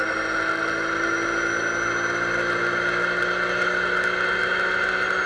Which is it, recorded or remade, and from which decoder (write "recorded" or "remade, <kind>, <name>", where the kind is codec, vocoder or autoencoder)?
recorded